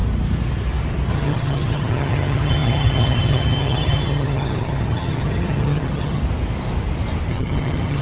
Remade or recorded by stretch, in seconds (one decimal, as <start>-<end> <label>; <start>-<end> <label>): 0.0-1.1 recorded; 1.1-6.2 remade; 6.2-7.3 recorded; 7.3-8.0 remade